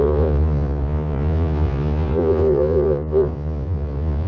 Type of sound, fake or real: fake